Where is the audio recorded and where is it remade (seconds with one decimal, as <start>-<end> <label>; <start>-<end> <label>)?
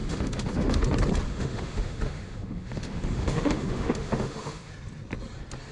0.0-0.8 remade; 0.8-1.3 recorded; 1.3-4.7 remade; 4.7-5.7 recorded